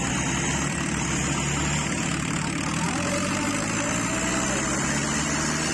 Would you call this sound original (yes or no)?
yes